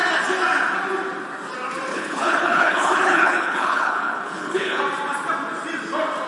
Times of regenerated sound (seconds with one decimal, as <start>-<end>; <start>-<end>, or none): 1.9-4.8